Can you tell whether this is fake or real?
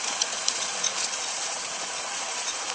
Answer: fake